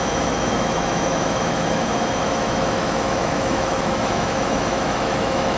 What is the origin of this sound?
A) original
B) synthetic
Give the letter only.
B